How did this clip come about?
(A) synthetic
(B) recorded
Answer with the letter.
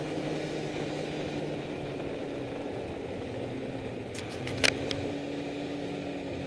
B